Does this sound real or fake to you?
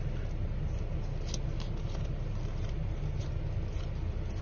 real